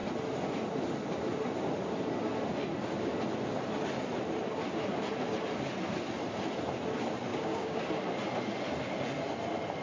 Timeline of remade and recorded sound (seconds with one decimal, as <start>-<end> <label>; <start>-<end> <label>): 0.0-7.3 recorded; 7.3-7.8 remade; 7.8-9.8 recorded